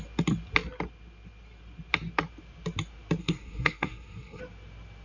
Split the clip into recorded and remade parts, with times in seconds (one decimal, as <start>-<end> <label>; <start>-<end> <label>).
0.0-3.2 recorded; 3.2-4.4 remade; 4.4-5.0 recorded